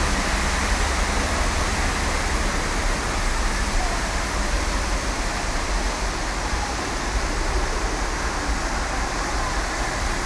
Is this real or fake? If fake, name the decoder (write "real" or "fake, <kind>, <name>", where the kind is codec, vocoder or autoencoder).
real